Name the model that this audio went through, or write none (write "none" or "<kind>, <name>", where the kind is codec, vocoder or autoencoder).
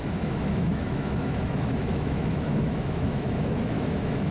autoencoder, DAC-VAE